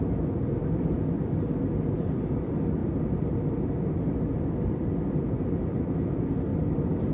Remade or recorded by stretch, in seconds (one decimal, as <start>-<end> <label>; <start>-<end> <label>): 0.0-7.1 recorded